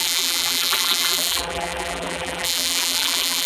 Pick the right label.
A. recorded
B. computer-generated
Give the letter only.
B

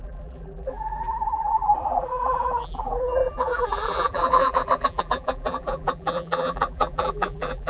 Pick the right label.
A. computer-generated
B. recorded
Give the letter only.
A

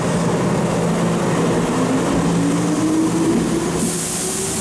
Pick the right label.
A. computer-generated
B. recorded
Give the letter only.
B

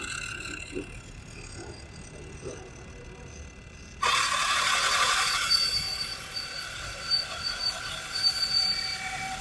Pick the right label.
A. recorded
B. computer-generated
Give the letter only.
A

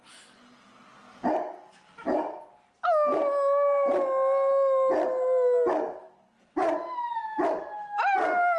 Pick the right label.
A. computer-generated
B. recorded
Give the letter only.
B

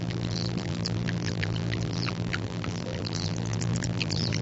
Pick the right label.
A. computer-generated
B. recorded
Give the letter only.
A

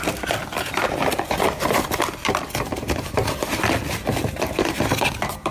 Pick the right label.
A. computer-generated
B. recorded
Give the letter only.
B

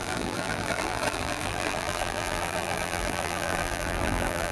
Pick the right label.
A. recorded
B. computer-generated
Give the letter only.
B